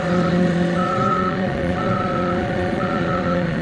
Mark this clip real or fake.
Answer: fake